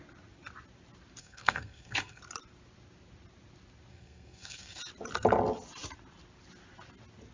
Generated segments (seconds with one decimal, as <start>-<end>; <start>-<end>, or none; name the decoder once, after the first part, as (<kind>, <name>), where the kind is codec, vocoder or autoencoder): 1.2-2.2 (codec, SNAC); 3.9-4.8